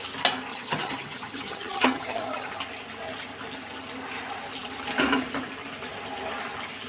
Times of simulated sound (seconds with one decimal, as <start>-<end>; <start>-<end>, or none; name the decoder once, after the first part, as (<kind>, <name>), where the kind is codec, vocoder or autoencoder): 0.5-2.5 (vocoder, HiFi-GAN)